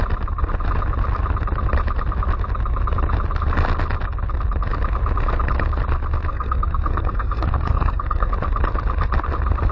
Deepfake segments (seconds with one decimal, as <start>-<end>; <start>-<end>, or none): 6.3-8.3